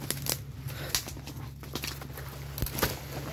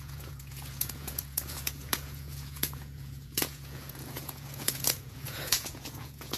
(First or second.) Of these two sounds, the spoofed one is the second